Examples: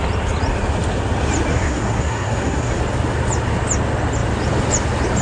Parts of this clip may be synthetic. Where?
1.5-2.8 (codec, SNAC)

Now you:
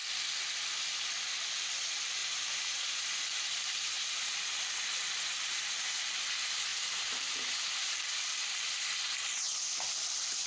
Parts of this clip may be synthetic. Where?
2.2-4.3 (vocoder, BigVGAN v2); 6.7-7.9

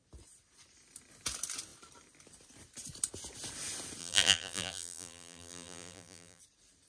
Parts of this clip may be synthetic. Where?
4.0-6.4 (vocoder, BigVGAN v2)

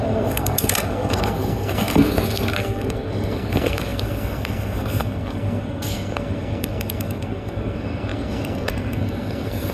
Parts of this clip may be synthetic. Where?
0.0-9.7 (codec, SNAC)

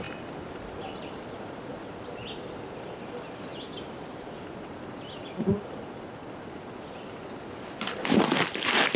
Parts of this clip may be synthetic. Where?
none